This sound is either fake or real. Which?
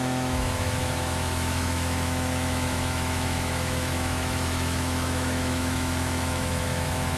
fake